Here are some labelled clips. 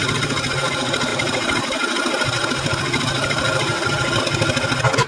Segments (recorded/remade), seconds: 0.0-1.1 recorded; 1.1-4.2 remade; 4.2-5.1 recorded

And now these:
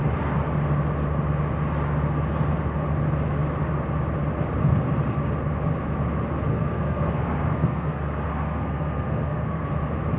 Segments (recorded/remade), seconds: 0.0-6.5 recorded; 6.5-9.7 remade; 9.7-10.2 recorded

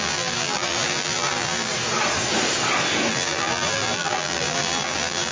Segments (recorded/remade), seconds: 0.0-1.7 remade; 1.7-3.1 recorded; 3.1-5.3 remade

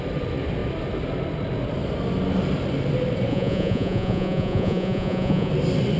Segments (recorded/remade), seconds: 0.0-3.3 recorded; 3.3-5.5 remade; 5.5-6.0 recorded

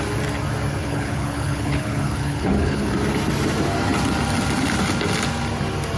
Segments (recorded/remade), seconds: 0.0-0.8 recorded; 0.8-2.9 remade; 2.9-6.0 recorded

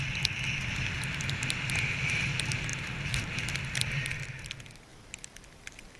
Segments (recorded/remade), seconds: 0.0-6.0 recorded

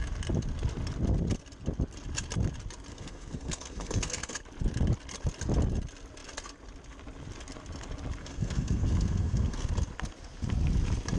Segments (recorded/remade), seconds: 0.0-2.9 recorded; 2.9-4.4 remade; 4.4-8.2 recorded; 8.2-9.7 remade; 9.7-11.2 recorded

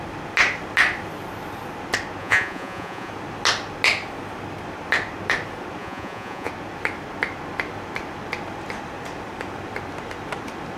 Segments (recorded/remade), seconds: 0.0-2.2 recorded; 2.2-3.1 remade; 3.1-5.8 recorded; 5.8-6.5 remade; 6.5-10.8 recorded